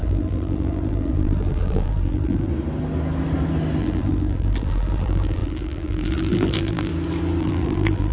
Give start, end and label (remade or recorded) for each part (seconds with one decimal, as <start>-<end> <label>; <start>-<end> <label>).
0.0-2.5 remade; 2.5-3.8 recorded; 3.8-6.9 remade; 6.9-7.4 recorded; 7.4-8.1 remade